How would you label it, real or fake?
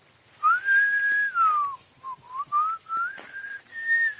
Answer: real